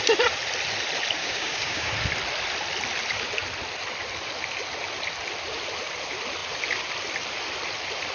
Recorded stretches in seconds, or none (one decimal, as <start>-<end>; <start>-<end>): 0.0-1.2; 1.9-8.1